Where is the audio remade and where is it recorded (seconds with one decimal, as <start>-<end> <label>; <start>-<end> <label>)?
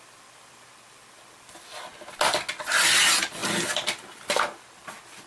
0.0-1.9 remade; 1.9-3.0 recorded; 3.0-5.3 remade